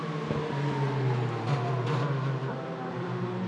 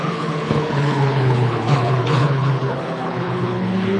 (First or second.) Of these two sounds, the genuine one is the first